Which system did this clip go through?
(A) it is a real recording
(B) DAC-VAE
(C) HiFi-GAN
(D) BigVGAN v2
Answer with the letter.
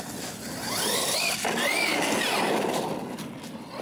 A